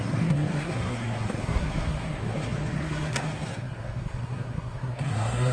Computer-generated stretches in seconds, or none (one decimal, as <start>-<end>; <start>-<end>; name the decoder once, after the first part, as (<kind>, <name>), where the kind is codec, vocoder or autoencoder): 0.0-5.5 (codec, SNAC)